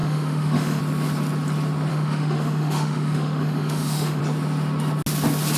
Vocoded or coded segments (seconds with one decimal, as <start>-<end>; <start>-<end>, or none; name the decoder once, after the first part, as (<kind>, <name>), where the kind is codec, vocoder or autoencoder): 0.0-0.8 (autoencoder, DAC-VAE); 1.9-4.2